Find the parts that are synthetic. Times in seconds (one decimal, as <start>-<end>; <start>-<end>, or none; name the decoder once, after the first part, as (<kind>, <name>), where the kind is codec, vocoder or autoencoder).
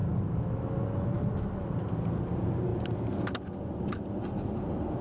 none